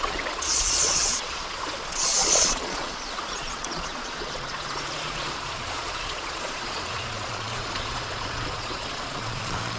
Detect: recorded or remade remade